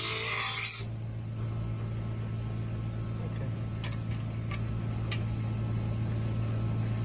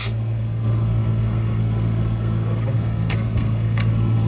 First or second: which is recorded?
first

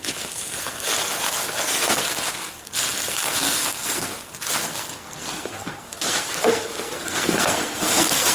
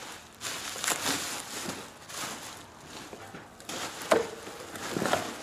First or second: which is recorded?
second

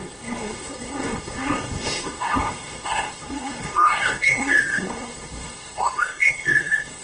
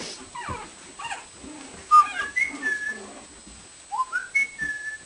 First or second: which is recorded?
second